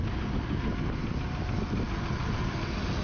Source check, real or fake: real